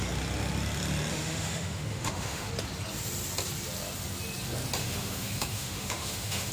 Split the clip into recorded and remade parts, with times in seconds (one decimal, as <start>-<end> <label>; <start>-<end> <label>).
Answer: 0.0-1.1 recorded; 1.1-2.5 remade; 2.5-4.8 recorded; 4.8-6.5 remade